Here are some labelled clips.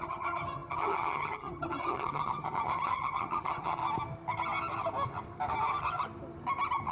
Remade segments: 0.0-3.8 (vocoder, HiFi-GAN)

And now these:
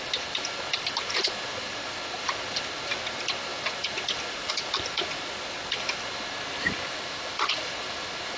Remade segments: none

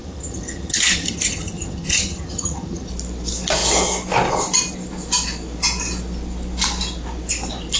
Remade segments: 0.0-2.9 (vocoder, HiFi-GAN)

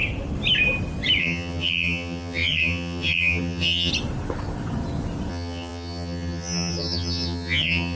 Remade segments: 1.2-3.9 (vocoder, HiFi-GAN); 5.3-8.0